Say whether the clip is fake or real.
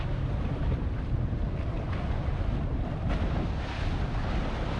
real